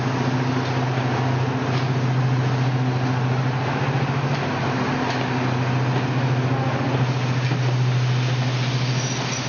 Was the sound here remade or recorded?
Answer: recorded